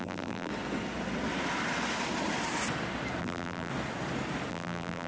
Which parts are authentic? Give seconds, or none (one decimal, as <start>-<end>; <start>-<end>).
0.5-3.2; 3.7-4.5